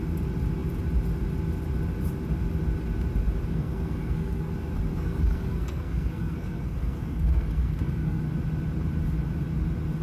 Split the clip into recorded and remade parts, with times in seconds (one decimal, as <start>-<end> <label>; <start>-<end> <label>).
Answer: 0.0-3.5 recorded; 3.5-4.5 remade; 4.5-4.9 recorded; 4.9-8.2 remade; 8.2-10.0 recorded